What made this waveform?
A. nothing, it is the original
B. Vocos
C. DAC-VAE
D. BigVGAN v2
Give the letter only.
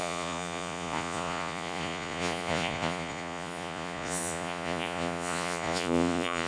B